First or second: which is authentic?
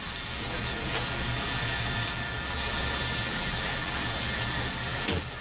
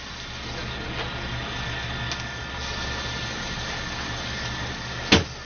second